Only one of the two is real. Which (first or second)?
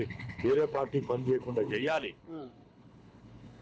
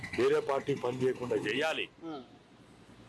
second